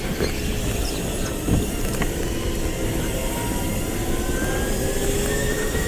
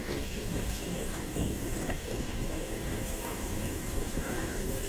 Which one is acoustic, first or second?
first